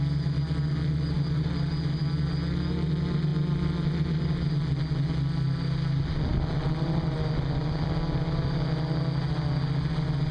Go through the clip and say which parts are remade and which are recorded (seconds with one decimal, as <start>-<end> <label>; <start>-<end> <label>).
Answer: 0.0-10.3 recorded